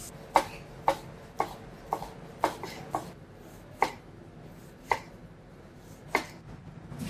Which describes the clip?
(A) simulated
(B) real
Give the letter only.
B